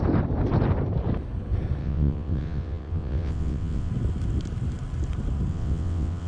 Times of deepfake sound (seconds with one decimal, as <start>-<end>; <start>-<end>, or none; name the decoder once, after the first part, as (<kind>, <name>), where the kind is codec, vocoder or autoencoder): 1.8-3.9 (vocoder, WaveNeXt); 5.5-6.3